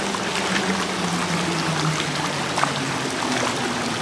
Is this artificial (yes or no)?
no